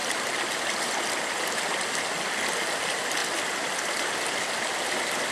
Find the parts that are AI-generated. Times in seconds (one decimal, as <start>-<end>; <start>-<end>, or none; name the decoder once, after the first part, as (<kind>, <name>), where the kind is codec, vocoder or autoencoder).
none